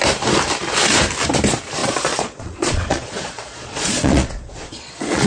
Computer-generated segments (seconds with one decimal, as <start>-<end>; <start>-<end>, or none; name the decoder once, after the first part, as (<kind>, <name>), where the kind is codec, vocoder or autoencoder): 1.8-5.3 (vocoder, Vocos)